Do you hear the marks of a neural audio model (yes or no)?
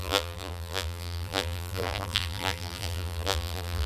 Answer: yes